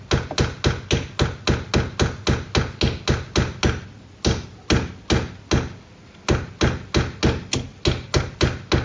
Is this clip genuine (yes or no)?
yes